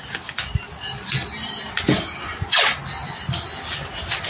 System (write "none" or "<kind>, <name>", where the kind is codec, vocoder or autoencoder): none